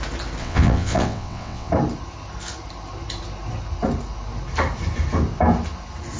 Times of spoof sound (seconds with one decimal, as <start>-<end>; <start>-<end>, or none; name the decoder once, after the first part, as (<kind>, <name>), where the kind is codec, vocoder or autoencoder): 0.4-1.7 (vocoder, WaveNeXt)